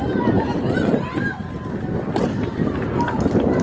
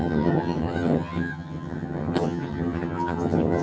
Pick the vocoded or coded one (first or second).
second